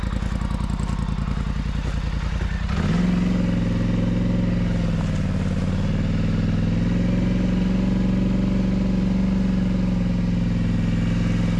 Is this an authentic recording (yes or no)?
yes